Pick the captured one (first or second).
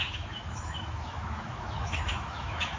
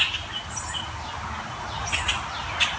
second